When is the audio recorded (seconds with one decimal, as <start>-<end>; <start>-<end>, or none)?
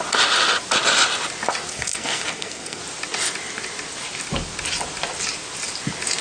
0.0-1.7; 2.8-6.2